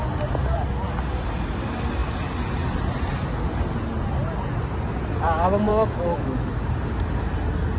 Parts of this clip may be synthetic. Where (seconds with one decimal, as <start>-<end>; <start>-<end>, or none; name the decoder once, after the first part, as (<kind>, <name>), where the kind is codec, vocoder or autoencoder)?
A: 5.7-6.5 (autoencoder, DAC-VAE)